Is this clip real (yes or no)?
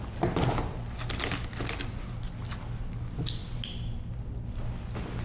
yes